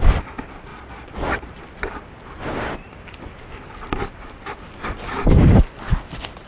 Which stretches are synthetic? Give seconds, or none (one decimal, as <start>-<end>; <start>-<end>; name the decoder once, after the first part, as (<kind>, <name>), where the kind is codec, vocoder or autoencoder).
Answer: 0.7-1.6 (vocoder, Vocos)